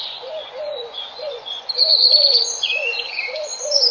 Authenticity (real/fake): fake